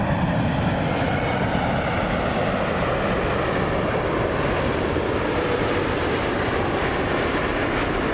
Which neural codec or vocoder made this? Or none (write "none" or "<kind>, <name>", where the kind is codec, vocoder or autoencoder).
none